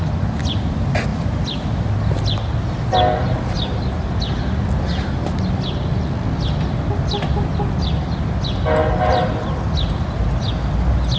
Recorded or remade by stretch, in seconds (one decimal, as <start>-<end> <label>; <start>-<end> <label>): 0.0-11.2 recorded